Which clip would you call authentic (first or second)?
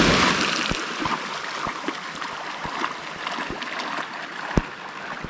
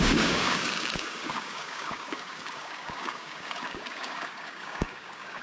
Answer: first